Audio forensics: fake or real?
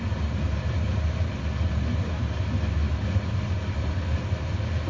real